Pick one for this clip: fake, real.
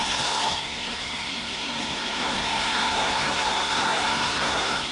fake